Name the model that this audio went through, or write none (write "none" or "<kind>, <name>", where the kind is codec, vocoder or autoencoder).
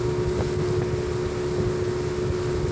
none